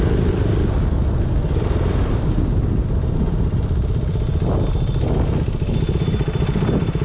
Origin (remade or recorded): recorded